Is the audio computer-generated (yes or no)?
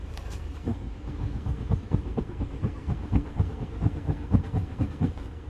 yes